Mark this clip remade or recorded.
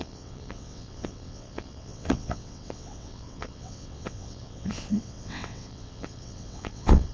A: remade